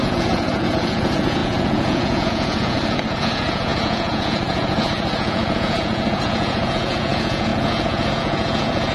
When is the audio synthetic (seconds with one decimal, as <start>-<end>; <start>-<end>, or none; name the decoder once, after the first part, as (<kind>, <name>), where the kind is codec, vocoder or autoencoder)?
0.0-8.9 (vocoder, Vocos)